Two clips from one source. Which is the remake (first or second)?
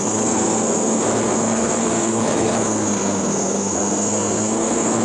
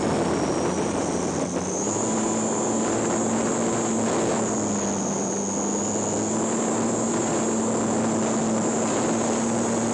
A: first